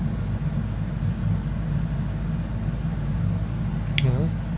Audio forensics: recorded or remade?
recorded